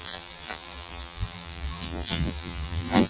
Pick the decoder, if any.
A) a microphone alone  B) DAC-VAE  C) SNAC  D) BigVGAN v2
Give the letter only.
D